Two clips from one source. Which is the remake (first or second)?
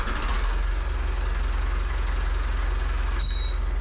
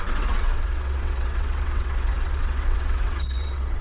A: second